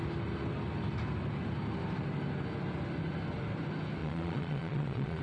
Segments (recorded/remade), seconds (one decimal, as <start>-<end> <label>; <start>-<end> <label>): 0.0-4.0 recorded; 4.0-5.2 remade